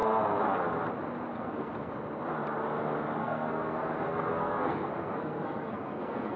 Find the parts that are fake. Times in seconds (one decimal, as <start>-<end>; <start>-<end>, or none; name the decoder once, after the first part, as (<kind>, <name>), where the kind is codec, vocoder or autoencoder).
1.3-1.9 (codec, SNAC); 3.2-6.4